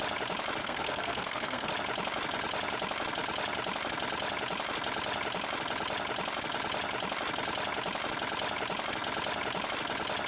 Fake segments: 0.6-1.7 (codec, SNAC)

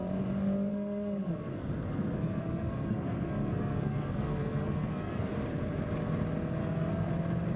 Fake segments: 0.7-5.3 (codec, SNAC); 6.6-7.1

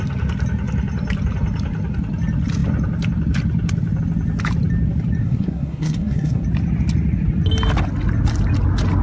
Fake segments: 5.2-6.4 (codec, SNAC)

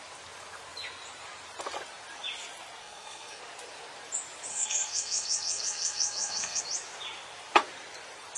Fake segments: 2.8-3.4 (codec, SNAC); 4.5-6.6

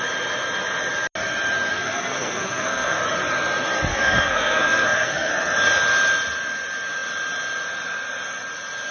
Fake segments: 1.7-3.0 (codec, SNAC); 3.9-5.3

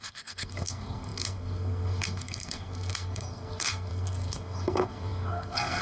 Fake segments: 0.0-5.8 (codec, SNAC)

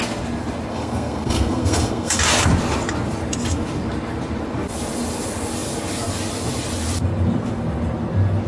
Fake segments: 0.7-2.2 (codec, SNAC)

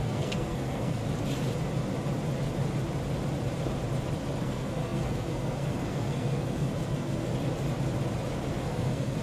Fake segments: 0.0-1.0 (codec, SNAC); 4.4-7.3; 8.5-9.2